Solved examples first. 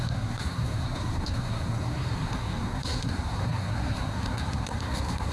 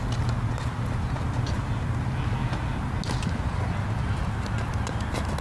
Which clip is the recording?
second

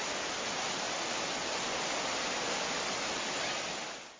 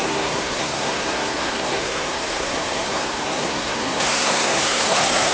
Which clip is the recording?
first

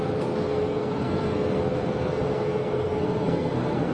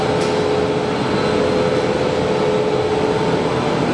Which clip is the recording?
second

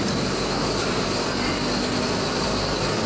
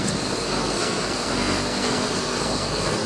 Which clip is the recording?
first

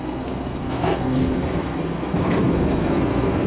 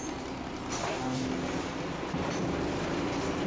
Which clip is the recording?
second